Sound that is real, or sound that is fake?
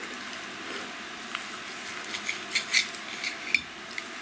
real